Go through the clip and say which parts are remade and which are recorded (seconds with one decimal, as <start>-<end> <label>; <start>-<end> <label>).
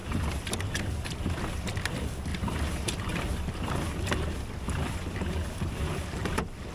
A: 0.0-0.5 recorded; 0.5-6.7 remade